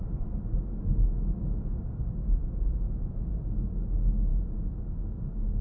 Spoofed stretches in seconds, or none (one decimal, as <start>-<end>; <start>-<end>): none